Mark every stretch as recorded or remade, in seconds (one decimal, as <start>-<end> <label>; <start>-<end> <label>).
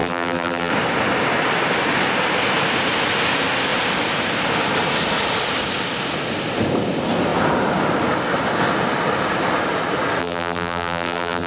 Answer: 0.0-0.7 remade; 0.7-10.2 recorded; 10.2-11.5 remade